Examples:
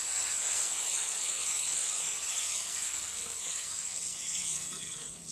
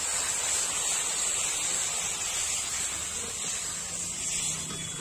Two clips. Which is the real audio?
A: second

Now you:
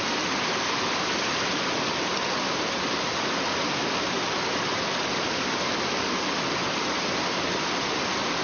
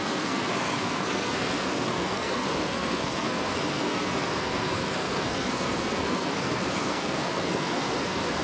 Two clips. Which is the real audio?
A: first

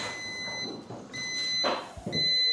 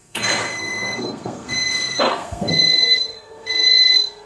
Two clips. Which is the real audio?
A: first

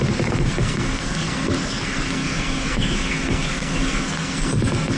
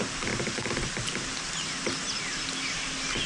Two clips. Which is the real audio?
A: second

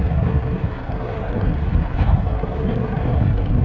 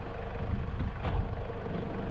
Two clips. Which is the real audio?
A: second